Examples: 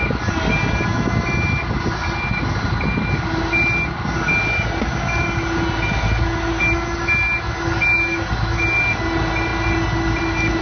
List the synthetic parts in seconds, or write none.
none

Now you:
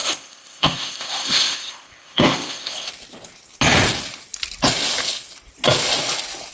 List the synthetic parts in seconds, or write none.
0.0-2.9 (codec, ZipCodec)

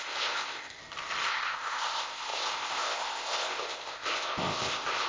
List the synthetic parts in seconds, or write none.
0.0-0.8 (codec, ZipCodec); 1.3-5.1

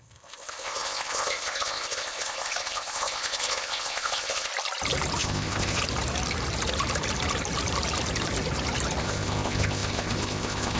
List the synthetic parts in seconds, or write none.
0.0-4.5 (codec, ZipCodec); 5.2-5.8; 9.0-10.8

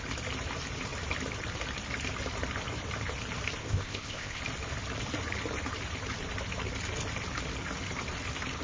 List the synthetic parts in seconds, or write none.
3.6-4.4 (codec, ZipCodec)